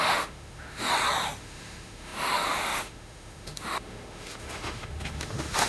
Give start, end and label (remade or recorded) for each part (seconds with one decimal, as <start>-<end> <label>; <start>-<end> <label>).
0.0-0.9 remade; 0.9-1.4 recorded; 1.4-5.7 remade